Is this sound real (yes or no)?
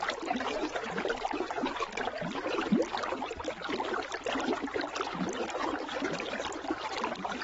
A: yes